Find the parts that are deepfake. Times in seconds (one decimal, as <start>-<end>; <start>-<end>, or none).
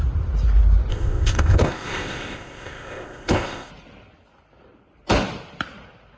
0.9-3.7